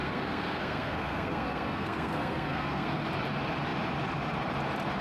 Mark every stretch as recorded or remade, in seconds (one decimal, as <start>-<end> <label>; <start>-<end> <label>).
0.0-3.0 remade; 3.0-5.0 recorded

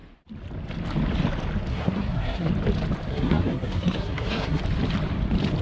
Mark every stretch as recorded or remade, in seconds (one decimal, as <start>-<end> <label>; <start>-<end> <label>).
0.0-1.7 recorded; 1.7-2.5 remade; 2.5-3.1 recorded; 3.1-4.6 remade; 4.6-5.6 recorded

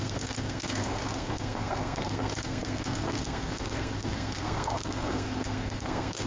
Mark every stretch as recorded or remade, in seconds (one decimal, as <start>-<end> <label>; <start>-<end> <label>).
0.0-6.3 remade

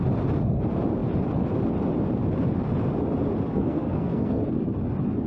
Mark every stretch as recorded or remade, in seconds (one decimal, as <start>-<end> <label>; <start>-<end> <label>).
0.0-3.5 recorded; 3.5-4.4 remade; 4.4-5.3 recorded